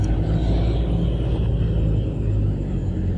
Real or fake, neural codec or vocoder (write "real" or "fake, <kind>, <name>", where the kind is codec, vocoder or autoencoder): real